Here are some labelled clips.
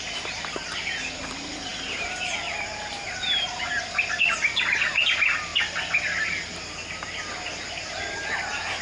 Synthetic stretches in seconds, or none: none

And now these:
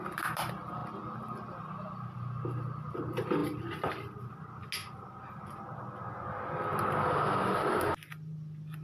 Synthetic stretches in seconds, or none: none

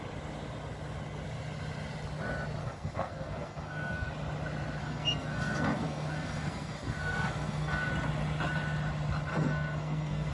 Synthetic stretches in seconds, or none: 2.6-4.1 (codec, SNAC); 4.8-7.9; 9.3-10.3

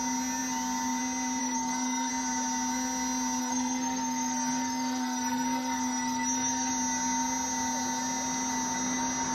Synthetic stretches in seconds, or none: 1.4-2.1 (codec, SNAC); 3.4-6.7

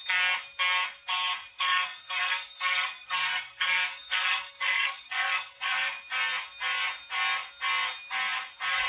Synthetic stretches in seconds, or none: 1.5-5.9 (codec, SNAC)

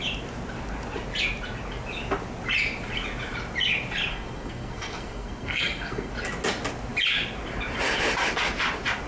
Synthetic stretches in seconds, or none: 4.1-6.1 (codec, SNAC)

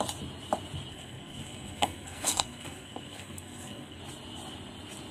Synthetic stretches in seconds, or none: 0.9-4.0 (codec, SNAC)

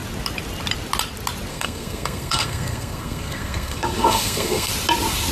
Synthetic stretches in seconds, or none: 1.5-4.7 (codec, SNAC)